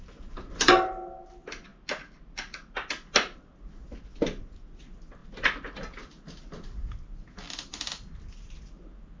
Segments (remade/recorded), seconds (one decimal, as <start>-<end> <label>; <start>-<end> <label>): 0.0-9.2 recorded